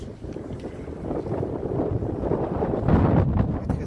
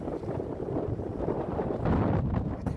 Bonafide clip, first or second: first